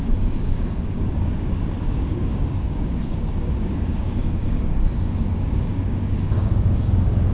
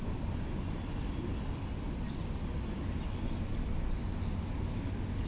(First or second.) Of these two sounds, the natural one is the second